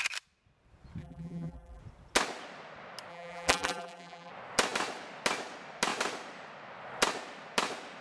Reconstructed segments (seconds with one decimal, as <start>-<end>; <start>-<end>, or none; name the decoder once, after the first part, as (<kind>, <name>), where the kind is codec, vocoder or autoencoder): 1.0-1.8 (vocoder, BigVGAN v2); 3.1-4.3

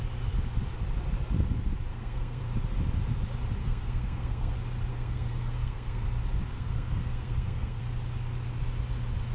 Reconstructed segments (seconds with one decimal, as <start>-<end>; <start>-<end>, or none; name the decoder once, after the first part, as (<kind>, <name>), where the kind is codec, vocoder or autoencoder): 1.9-2.4 (codec, SNAC); 3.6-4.5; 4.9-6.0; 6.5-7.8